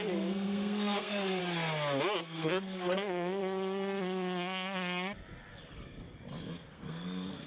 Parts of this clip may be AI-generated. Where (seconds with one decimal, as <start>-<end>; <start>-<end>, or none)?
0.0-1.4; 2.2-3.4; 6.7-7.5